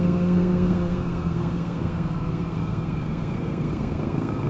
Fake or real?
fake